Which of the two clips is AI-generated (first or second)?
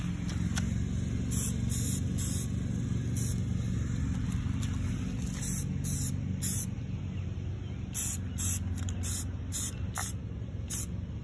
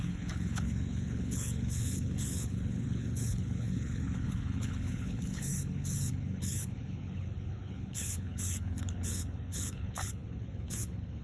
second